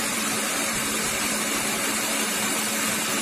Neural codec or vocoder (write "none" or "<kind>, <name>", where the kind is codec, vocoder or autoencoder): vocoder, BigVGAN v2